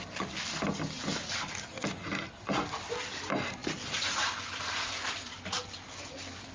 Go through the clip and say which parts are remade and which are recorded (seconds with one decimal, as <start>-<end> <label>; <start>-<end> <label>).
0.0-6.5 recorded